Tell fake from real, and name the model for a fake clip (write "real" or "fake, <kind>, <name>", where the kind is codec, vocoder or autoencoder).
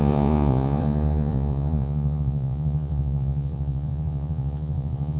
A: fake, vocoder, Vocos